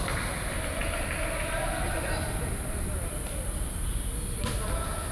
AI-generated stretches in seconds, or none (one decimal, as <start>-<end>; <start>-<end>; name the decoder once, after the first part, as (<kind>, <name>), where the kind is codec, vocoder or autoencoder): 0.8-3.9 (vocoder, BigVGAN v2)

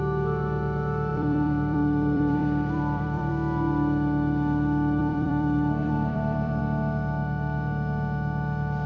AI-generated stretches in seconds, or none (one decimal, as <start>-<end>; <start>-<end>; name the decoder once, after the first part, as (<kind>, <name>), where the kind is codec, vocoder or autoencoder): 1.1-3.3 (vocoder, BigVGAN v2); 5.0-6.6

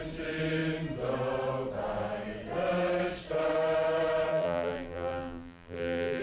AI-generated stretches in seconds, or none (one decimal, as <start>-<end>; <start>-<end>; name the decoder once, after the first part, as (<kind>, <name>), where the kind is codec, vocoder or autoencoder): 4.3-6.2 (vocoder, BigVGAN v2)

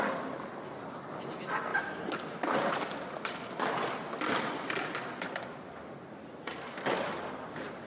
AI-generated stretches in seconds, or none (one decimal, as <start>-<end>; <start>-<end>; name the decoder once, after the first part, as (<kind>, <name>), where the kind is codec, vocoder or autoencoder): 0.0-1.7 (vocoder, BigVGAN v2); 6.1-7.9

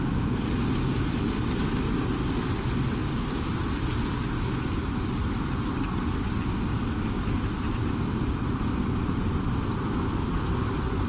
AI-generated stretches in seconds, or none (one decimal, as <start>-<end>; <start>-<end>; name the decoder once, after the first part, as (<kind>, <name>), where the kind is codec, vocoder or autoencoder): none

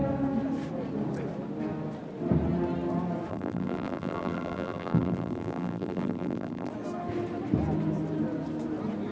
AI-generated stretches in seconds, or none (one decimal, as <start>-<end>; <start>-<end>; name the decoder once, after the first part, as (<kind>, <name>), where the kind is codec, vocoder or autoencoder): 3.3-6.7 (vocoder, BigVGAN v2)